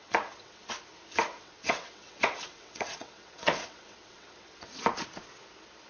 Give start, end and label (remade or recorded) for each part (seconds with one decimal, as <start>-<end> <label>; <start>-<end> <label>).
0.0-0.7 remade; 0.7-1.3 recorded; 1.3-4.8 remade; 4.8-5.9 recorded